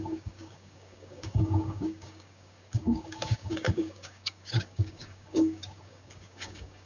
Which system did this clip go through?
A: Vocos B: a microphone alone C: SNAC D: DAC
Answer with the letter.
D